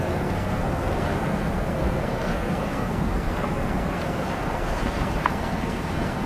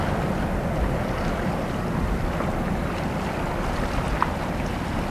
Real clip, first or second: second